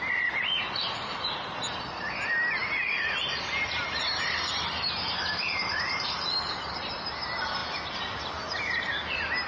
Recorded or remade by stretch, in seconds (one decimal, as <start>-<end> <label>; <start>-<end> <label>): 0.0-9.5 recorded